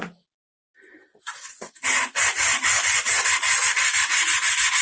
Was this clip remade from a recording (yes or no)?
no